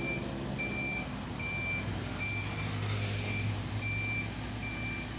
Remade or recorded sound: recorded